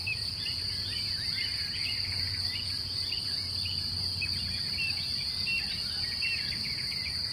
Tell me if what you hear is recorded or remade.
recorded